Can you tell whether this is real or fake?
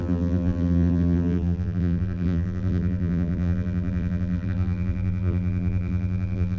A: fake